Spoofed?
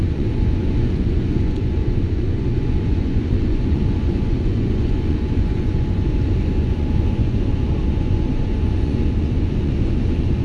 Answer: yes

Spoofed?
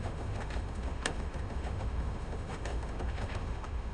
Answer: yes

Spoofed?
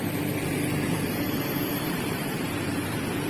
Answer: yes